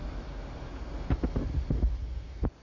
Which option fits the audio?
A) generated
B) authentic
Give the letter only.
B